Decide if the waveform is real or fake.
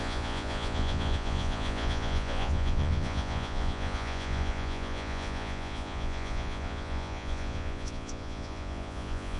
fake